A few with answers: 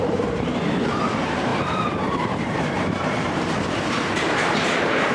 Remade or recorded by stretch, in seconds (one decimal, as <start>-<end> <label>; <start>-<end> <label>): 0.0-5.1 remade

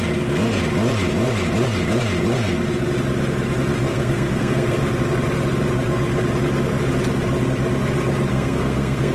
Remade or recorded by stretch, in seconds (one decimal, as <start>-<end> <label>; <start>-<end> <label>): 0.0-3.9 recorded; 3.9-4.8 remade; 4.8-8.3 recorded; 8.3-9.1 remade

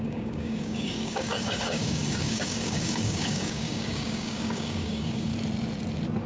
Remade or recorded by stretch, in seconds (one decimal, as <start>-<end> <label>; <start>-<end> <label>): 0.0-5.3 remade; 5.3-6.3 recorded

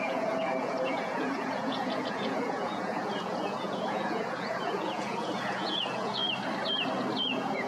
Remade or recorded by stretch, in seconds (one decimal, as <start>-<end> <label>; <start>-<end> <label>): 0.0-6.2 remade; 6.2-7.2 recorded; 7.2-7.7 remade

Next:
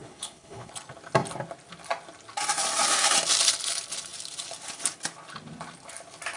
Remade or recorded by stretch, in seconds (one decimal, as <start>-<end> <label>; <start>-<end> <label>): 0.0-0.7 remade; 0.7-6.4 recorded